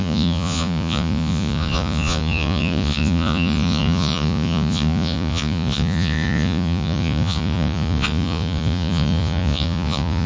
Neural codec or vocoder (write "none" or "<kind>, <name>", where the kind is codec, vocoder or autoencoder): vocoder, Vocos